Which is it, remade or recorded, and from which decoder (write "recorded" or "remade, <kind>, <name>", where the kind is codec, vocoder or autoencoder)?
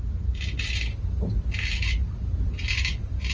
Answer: recorded